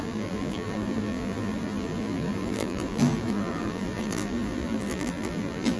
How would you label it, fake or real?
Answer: fake